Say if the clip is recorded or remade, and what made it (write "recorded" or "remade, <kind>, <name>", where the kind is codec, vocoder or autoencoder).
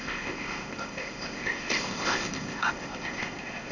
remade, codec, ZipCodec